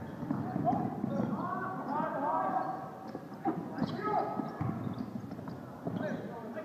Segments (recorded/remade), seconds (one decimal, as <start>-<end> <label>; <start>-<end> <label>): 0.0-6.6 recorded